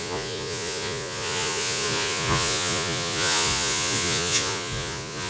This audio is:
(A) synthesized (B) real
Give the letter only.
A